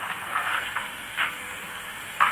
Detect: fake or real fake